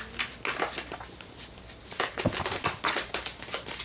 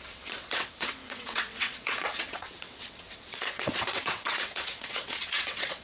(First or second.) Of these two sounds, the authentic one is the first